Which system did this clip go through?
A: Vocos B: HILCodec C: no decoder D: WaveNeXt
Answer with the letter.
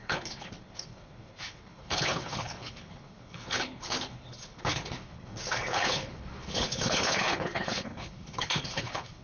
B